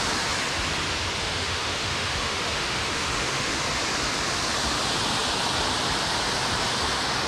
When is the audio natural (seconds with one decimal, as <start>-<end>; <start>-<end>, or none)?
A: 0.0-1.2; 3.6-7.3